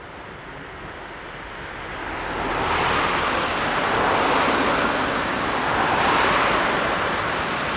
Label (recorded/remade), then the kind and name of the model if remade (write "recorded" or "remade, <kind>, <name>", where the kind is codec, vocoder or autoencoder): recorded